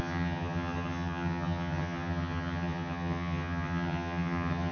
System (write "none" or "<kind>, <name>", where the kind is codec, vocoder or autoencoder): vocoder, HiFi-GAN